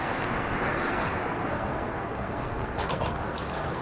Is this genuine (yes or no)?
no